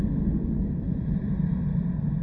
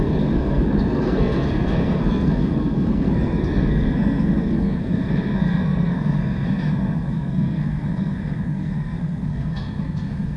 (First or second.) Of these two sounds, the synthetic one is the second